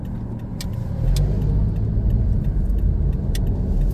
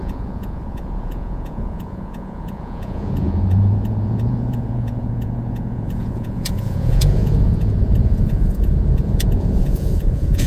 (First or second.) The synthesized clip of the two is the second